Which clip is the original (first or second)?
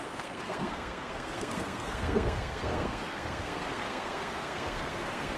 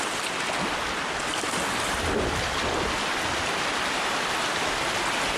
second